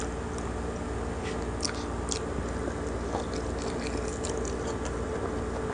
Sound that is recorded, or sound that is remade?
recorded